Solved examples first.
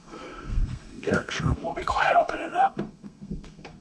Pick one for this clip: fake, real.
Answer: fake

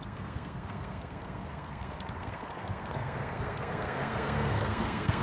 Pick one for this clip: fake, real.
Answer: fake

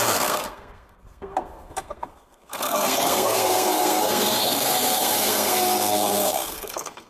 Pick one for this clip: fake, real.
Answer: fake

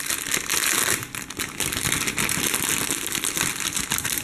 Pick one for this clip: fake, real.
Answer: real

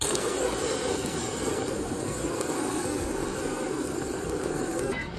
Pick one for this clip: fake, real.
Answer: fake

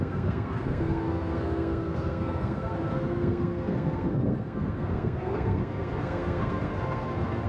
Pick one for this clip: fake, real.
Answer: fake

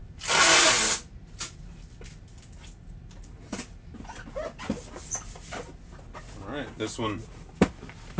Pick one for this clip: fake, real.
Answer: real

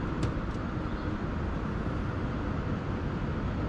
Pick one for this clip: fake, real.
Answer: real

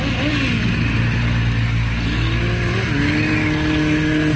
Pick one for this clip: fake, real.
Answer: real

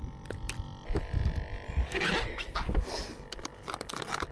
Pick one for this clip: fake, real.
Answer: real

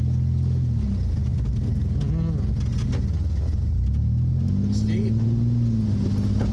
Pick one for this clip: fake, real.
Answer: real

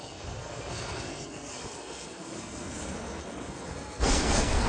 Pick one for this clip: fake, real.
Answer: fake